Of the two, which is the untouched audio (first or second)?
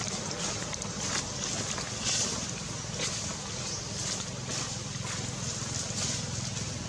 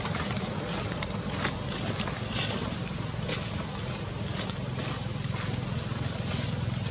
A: first